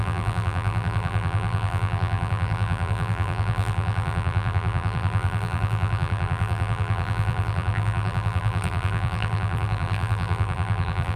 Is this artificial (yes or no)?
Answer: yes